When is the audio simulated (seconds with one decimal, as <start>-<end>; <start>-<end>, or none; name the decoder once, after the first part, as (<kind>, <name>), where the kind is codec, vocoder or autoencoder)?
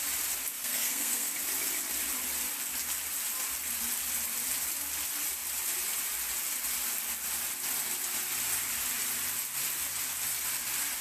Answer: 0.5-1.3 (codec, SNAC)